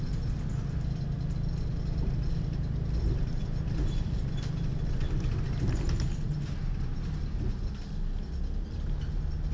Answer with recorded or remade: recorded